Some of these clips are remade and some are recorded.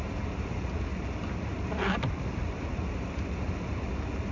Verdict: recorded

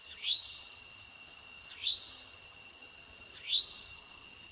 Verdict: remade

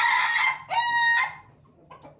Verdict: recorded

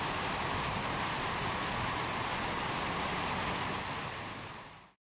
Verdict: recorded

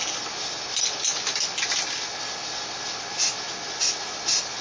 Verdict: recorded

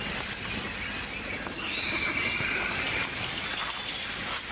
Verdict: recorded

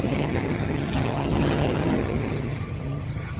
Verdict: remade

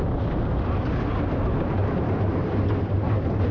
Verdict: recorded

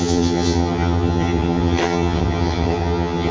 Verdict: remade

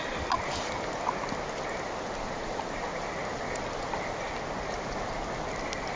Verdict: recorded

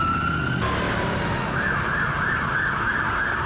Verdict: recorded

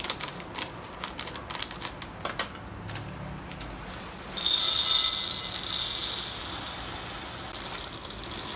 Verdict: recorded